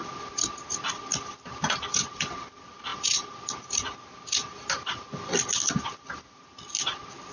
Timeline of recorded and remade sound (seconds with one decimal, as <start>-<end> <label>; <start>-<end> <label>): 0.0-7.3 recorded